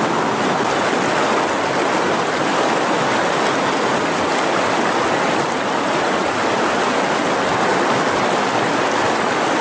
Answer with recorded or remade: recorded